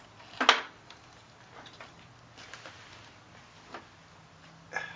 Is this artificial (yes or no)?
no